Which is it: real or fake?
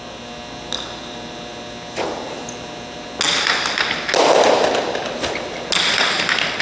real